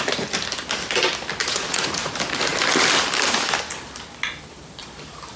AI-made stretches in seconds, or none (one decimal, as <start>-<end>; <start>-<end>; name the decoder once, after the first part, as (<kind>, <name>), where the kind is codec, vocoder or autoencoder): 1.4-2.1 (vocoder, Vocos)